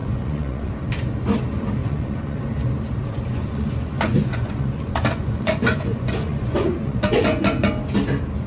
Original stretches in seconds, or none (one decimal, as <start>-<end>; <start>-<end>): 0.7-1.8; 2.4-3.3; 7.7-8.5